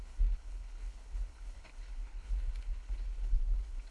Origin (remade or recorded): remade